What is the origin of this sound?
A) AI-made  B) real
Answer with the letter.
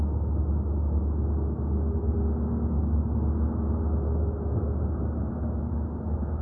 B